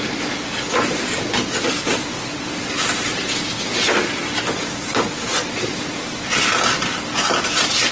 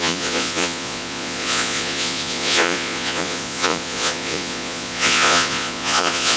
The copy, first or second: second